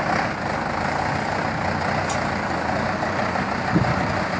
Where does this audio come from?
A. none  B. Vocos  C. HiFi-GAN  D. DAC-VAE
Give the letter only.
A